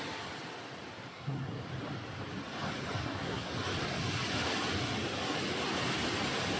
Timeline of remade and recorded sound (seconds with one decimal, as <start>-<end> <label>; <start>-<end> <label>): 0.0-1.1 recorded; 1.1-1.6 remade; 1.6-3.0 recorded; 3.0-3.5 remade; 3.5-6.6 recorded